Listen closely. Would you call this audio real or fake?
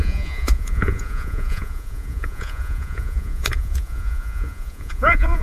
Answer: fake